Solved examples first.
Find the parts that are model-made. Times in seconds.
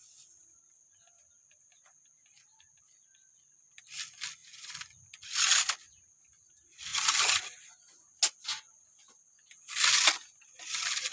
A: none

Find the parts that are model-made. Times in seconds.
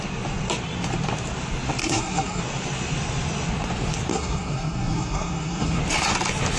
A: 1.8-2.4 (codec, SNAC); 4.1-5.8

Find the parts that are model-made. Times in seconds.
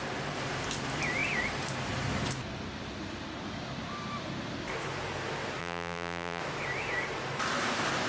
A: 5.6-6.4 (vocoder, BigVGAN v2)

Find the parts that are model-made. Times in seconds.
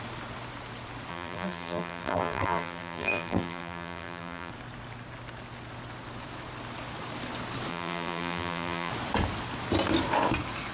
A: 1.1-4.5 (vocoder, BigVGAN v2); 7.7-8.9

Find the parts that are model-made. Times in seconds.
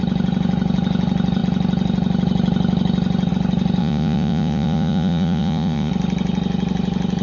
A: 3.8-5.9 (vocoder, Vocos)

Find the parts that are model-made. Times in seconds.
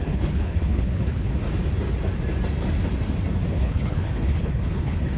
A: 0.0-1.3 (codec, HILCodec); 3.5-5.2